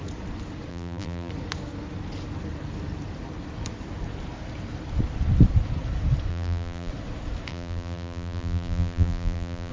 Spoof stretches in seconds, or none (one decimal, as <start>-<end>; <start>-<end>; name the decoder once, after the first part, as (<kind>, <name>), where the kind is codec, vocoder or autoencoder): 0.7-1.3 (vocoder, BigVGAN v2); 6.3-6.9; 7.5-9.7